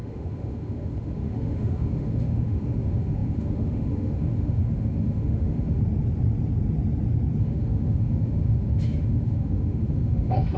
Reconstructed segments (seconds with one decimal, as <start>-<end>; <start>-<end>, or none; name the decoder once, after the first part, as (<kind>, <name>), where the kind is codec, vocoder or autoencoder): 0.0-5.8 (autoencoder, DAC-VAE); 7.4-10.6